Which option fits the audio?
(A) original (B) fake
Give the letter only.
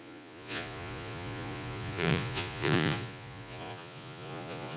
B